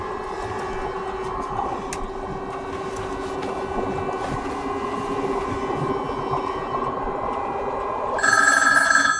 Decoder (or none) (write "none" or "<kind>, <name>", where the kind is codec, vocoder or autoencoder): none